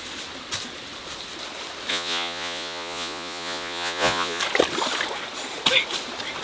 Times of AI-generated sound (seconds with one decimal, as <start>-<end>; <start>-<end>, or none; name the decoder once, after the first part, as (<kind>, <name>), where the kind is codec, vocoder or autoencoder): 1.9-4.4 (vocoder, Vocos)